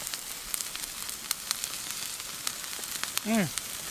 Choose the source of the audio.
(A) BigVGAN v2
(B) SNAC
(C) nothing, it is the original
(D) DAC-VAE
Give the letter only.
C